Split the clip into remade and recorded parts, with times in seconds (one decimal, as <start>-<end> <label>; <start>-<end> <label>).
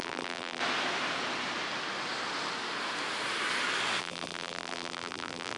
0.0-0.6 remade; 0.6-4.0 recorded; 4.0-5.6 remade